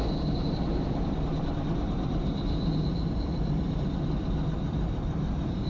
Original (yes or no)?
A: no